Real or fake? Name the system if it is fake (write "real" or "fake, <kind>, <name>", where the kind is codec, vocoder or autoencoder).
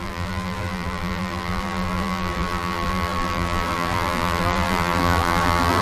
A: fake, vocoder, BigVGAN v2